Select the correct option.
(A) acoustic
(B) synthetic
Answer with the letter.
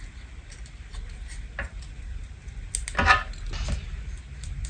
A